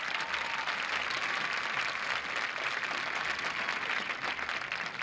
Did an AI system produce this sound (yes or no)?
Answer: no